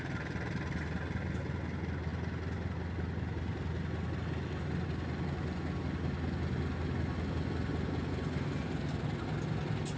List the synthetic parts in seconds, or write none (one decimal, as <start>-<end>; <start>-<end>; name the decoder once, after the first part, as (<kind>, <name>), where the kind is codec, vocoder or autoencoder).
none